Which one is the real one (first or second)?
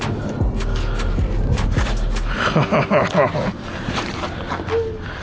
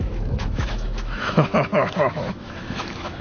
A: first